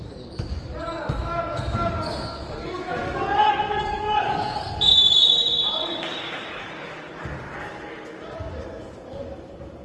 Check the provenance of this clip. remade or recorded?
remade